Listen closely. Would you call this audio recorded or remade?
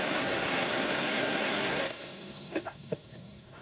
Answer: remade